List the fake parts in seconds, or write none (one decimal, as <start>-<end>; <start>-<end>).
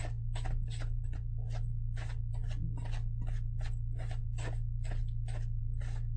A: none